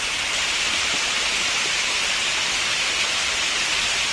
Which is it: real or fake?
real